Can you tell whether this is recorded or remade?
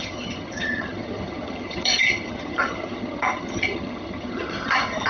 remade